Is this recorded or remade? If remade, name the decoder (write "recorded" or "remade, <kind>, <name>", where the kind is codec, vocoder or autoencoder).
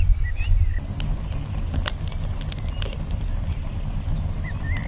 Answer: recorded